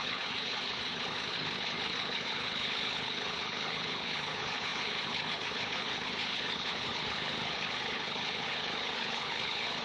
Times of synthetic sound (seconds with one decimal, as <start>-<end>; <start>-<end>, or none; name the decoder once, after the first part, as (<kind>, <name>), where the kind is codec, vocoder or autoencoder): 0.0-9.8 (codec, HILCodec)